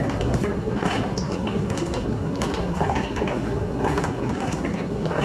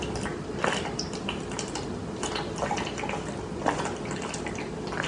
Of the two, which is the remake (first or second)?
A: first